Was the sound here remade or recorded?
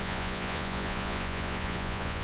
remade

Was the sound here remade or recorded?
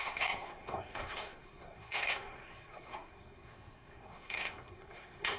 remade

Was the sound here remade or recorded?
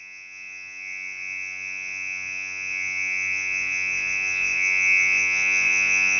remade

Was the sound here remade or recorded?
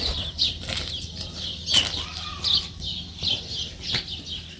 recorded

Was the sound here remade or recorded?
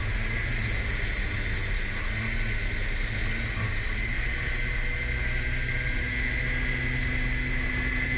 recorded